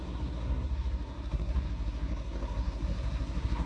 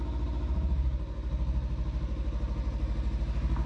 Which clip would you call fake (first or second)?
first